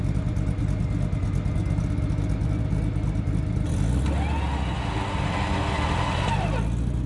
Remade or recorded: recorded